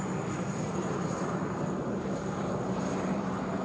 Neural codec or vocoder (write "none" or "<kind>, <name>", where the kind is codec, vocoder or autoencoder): vocoder, BigVGAN v2